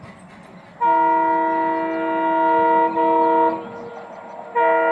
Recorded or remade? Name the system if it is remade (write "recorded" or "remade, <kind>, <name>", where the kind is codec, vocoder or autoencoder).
recorded